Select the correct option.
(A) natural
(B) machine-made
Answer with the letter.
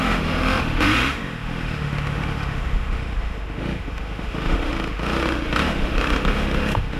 B